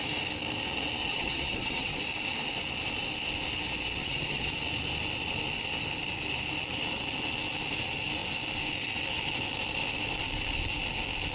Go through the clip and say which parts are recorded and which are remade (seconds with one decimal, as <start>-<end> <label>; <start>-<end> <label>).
0.0-1.0 recorded; 1.0-2.0 remade; 2.0-4.0 recorded; 4.0-4.5 remade; 4.5-11.3 recorded